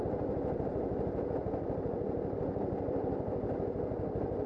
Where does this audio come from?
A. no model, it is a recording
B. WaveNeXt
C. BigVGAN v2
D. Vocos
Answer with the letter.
A